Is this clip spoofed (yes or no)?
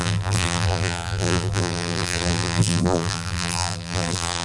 yes